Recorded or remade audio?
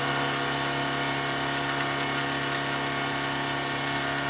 recorded